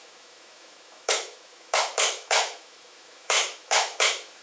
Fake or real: fake